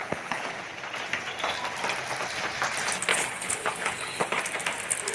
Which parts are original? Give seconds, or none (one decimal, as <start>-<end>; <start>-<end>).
0.6-3.1; 4.4-5.1